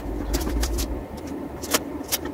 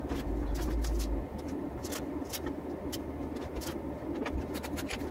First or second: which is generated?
first